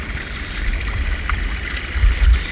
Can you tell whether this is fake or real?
fake